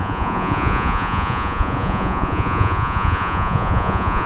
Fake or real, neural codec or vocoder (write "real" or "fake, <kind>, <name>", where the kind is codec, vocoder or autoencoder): fake, vocoder, Vocos